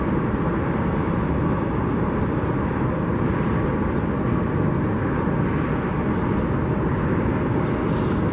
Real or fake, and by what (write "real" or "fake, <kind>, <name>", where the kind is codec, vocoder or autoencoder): real